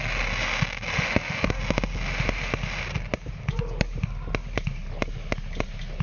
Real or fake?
real